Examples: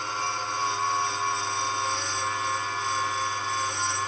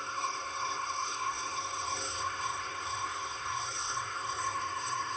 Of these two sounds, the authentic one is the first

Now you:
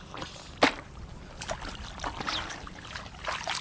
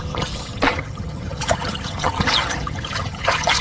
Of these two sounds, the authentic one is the first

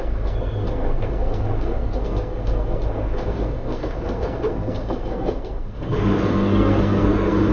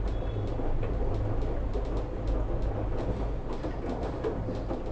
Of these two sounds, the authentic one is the second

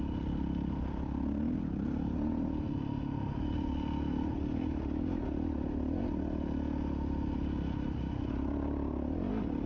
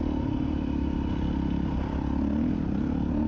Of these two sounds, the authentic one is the first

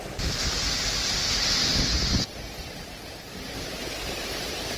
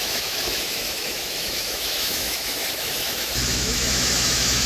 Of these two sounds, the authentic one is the first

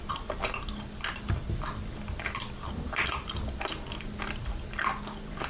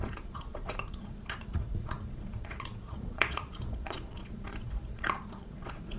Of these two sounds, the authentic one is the first